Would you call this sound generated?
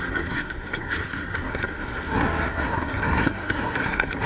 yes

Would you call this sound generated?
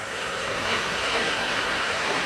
yes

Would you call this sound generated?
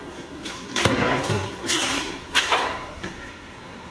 yes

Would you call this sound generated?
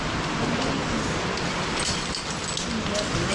no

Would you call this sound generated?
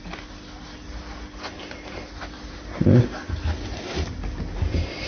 no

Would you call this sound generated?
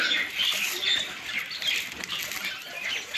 no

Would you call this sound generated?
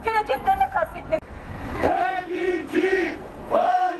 yes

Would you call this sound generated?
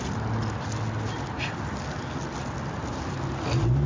no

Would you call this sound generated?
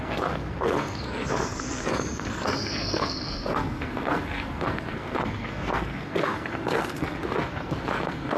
yes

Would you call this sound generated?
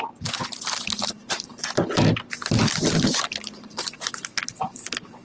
no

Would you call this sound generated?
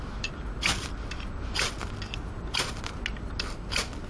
no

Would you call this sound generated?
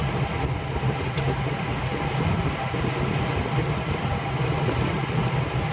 no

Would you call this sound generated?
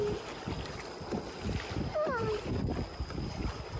no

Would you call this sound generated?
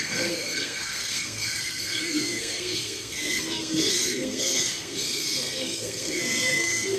yes